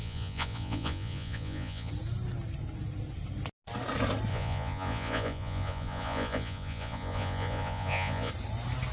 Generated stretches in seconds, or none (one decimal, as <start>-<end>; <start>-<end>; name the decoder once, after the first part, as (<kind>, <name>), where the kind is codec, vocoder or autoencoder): 0.0-1.9 (vocoder, Vocos); 4.3-8.3